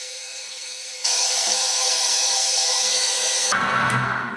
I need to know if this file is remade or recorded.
remade